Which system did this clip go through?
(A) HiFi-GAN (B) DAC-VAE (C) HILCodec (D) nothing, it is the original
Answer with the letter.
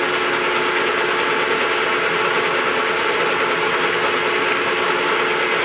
D